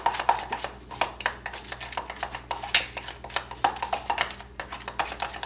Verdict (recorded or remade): recorded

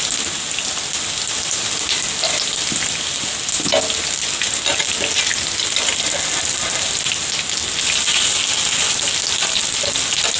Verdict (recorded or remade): recorded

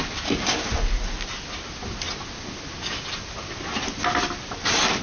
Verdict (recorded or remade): recorded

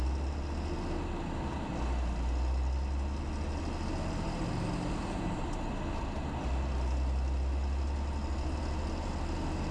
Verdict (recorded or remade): recorded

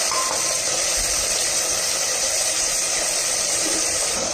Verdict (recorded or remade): remade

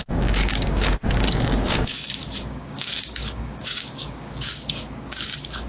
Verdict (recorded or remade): remade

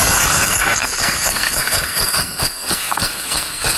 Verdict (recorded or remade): remade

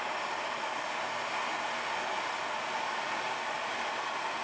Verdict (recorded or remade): recorded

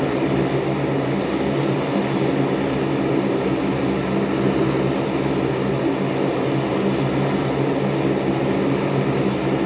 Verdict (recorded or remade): recorded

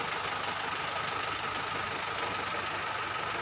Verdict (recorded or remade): recorded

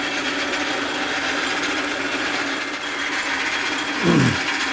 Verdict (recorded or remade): recorded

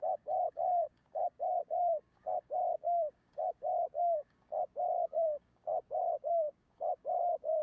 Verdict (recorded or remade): remade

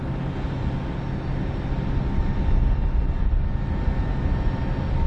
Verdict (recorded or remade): recorded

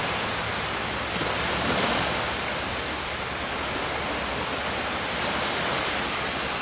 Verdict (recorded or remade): recorded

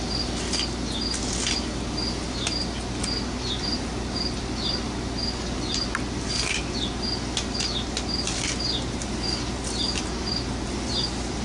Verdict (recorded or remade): recorded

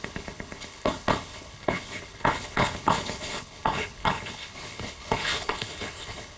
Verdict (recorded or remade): remade